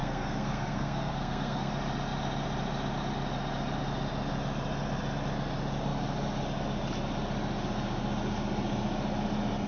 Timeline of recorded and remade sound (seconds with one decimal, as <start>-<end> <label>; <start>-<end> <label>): 0.0-1.7 remade; 1.7-9.7 recorded

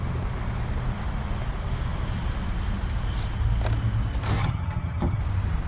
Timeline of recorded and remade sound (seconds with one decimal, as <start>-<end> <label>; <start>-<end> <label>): 0.0-4.4 recorded; 4.4-5.2 remade; 5.2-5.7 recorded

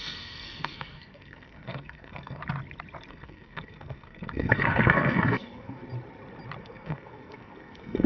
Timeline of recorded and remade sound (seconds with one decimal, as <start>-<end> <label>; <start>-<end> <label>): 0.0-2.4 remade; 2.4-3.1 recorded; 3.1-5.8 remade; 5.8-6.6 recorded; 6.6-8.1 remade

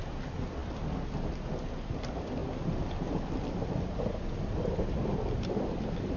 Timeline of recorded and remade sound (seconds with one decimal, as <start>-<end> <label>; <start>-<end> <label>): 0.0-6.2 recorded